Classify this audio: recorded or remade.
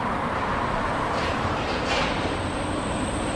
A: remade